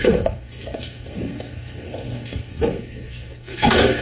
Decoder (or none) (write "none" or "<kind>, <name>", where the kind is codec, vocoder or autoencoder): codec, SNAC